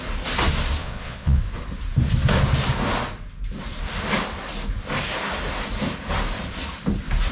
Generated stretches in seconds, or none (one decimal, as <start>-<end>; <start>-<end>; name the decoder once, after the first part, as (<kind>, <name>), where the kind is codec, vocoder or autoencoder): 0.8-1.4 (vocoder, Vocos)